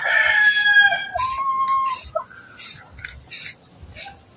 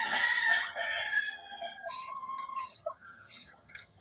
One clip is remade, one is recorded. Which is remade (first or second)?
second